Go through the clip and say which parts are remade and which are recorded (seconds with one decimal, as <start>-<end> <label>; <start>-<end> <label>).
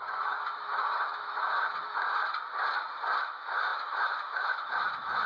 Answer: 0.0-2.2 remade; 2.2-3.2 recorded; 3.2-5.3 remade